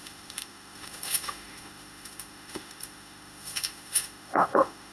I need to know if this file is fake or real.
fake